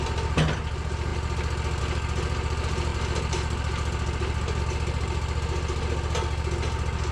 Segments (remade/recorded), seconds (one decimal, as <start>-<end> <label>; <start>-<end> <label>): 0.0-7.1 recorded